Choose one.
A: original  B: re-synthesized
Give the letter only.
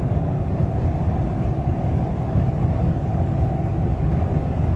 B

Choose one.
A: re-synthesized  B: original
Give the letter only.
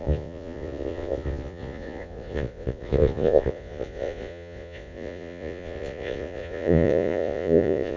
A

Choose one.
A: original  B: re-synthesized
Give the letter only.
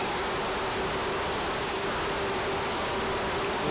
A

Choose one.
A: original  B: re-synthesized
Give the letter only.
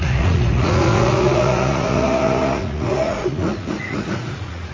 B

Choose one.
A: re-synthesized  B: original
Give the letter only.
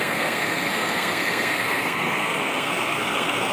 A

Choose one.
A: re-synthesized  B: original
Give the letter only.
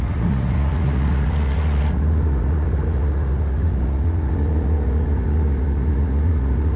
A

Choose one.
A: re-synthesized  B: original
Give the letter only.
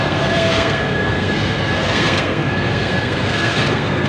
A